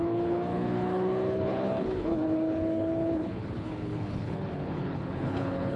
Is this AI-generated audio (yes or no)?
yes